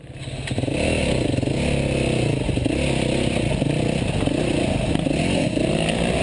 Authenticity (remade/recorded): recorded